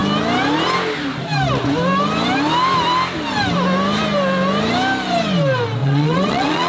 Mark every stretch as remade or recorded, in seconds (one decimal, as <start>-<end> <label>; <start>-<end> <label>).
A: 0.0-5.8 recorded; 5.8-6.7 remade